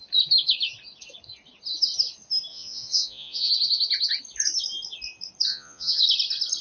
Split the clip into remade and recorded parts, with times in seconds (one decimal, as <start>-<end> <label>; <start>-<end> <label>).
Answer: 0.0-2.5 recorded; 2.5-3.5 remade; 3.5-5.5 recorded; 5.5-6.0 remade; 6.0-6.6 recorded